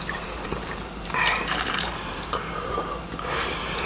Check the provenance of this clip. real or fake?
fake